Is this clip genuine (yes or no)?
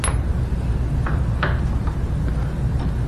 yes